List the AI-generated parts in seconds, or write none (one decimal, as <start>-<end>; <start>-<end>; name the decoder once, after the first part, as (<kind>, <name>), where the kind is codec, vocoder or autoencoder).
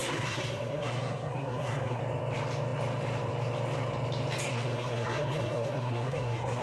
0.0-2.0 (codec, SNAC); 4.5-6.6